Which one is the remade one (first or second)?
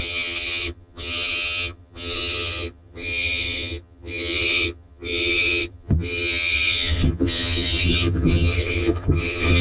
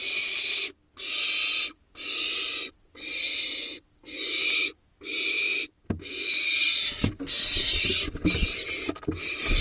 first